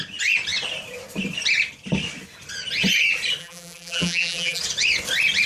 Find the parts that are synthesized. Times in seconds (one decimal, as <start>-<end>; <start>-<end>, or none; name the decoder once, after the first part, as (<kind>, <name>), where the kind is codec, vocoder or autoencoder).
3.4-4.6 (vocoder, BigVGAN v2)